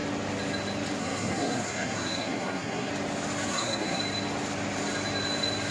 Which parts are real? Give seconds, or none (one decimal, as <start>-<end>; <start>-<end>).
0.0-1.0; 2.9-3.5; 4.0-5.7